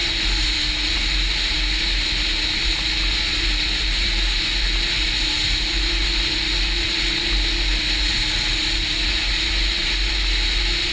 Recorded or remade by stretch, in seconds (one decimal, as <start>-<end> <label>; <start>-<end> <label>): 0.0-10.9 recorded